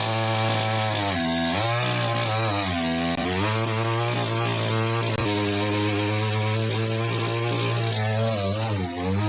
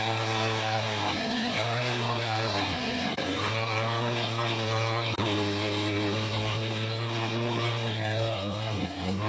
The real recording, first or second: first